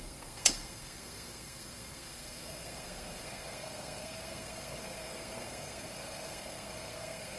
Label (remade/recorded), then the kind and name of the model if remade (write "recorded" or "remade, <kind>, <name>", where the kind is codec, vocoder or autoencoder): remade, codec, SNAC